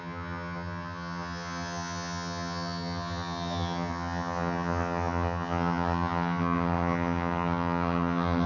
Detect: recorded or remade remade